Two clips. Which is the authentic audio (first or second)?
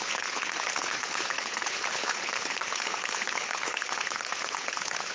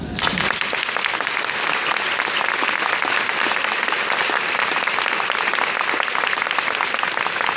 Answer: second